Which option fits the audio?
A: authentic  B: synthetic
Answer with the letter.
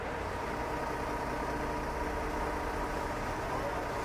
A